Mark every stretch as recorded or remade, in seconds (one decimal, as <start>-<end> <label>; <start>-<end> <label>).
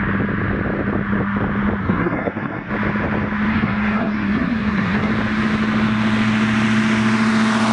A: 0.0-1.8 recorded; 1.8-2.7 remade; 2.7-3.5 recorded; 3.5-5.1 remade; 5.1-7.7 recorded